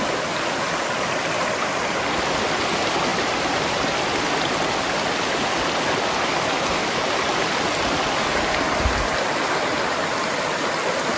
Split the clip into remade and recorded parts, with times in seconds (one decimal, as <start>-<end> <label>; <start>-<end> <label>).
0.0-11.2 recorded